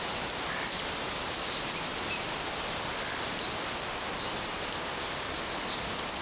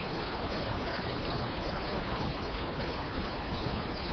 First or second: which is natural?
first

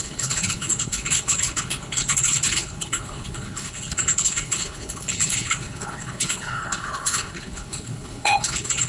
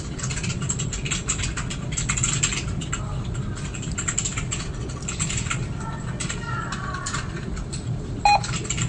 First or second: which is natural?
second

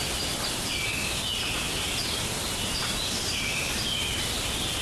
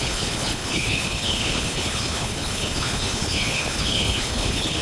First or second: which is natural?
first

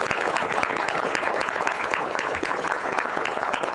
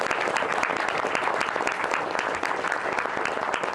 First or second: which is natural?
second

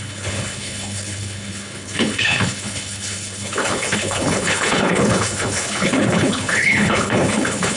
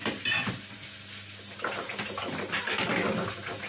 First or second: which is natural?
second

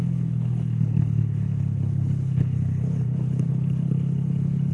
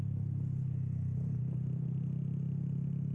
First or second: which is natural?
second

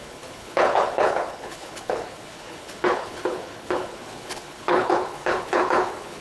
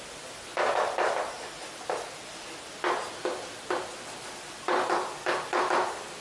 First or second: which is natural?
second